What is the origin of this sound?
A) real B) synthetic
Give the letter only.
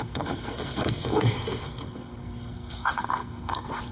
B